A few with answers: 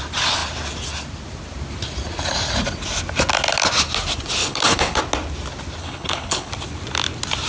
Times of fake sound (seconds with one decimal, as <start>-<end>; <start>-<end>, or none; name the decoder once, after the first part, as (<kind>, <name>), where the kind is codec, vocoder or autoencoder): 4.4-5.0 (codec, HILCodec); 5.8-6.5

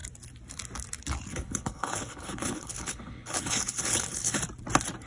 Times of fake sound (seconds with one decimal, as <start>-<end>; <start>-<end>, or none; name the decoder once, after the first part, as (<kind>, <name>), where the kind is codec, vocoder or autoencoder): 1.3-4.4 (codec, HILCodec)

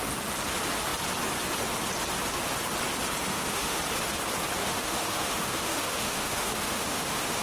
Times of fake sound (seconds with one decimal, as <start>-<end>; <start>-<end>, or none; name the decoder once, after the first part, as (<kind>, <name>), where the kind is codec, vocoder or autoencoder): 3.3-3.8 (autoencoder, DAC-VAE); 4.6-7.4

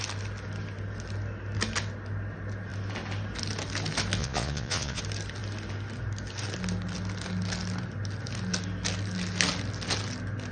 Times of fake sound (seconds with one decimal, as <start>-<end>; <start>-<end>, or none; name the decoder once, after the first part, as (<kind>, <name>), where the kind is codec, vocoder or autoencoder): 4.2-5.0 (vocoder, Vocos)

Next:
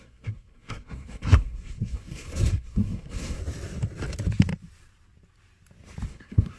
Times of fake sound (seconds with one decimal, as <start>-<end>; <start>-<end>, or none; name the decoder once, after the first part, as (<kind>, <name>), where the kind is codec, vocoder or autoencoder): 0.0-3.4 (codec, SNAC); 6.1-6.6